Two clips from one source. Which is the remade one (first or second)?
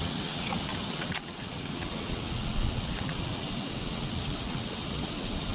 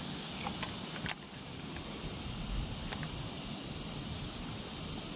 first